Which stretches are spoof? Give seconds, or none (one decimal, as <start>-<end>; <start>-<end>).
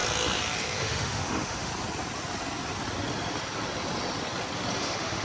0.8-1.7; 4.8-5.2